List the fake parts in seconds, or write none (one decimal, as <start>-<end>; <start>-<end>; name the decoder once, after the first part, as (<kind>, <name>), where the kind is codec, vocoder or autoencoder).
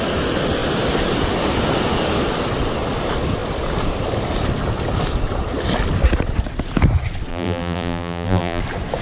7.3-8.6 (vocoder, BigVGAN v2)